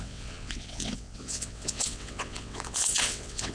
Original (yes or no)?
no